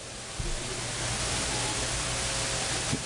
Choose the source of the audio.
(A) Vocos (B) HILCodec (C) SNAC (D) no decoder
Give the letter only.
D